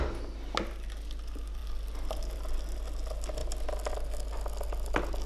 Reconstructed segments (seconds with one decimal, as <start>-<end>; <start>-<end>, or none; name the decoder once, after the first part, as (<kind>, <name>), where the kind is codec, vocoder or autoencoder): none